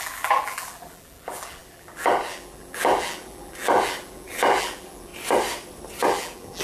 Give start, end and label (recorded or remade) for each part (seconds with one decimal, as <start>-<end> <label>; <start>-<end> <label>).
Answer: 0.0-5.1 remade; 5.1-6.0 recorded; 6.0-6.6 remade